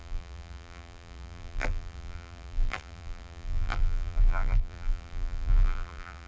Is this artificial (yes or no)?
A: yes